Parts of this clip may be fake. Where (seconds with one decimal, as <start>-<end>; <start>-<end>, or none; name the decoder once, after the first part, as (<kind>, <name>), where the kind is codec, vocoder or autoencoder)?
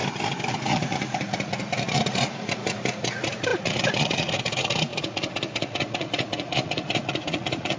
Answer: 0.5-7.8 (vocoder, Vocos)